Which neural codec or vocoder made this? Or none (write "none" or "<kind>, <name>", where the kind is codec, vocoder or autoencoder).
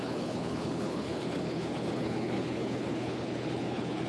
codec, HILCodec